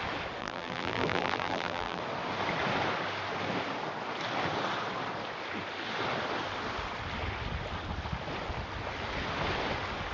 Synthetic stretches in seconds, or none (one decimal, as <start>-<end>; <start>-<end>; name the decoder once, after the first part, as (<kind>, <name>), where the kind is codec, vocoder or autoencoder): 0.4-2.0 (vocoder, BigVGAN v2)